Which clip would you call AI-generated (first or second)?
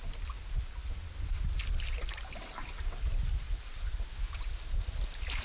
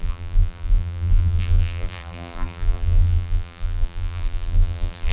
second